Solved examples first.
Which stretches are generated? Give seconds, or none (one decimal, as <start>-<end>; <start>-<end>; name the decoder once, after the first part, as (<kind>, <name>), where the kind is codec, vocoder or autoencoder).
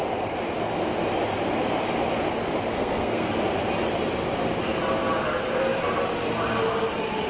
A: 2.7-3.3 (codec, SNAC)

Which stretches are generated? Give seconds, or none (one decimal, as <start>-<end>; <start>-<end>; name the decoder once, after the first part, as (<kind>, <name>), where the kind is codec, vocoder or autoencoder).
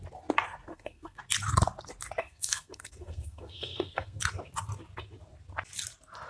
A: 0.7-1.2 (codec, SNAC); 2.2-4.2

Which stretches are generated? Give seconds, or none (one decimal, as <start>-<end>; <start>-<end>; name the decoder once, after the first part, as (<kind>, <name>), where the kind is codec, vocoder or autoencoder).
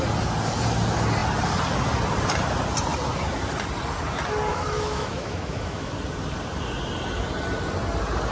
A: 4.5-5.9 (autoencoder, DAC-VAE)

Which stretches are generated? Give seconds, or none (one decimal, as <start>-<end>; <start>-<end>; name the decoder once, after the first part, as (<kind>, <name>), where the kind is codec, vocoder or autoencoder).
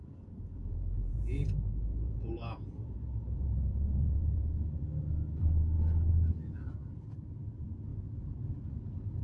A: 0.0-4.8 (vocoder, Vocos)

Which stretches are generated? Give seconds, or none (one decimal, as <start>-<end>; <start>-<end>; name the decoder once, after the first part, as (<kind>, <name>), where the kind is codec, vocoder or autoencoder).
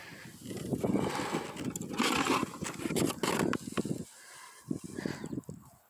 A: none